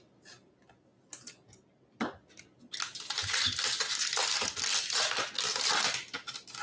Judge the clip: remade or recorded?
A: recorded